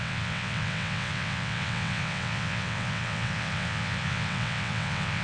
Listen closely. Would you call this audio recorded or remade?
remade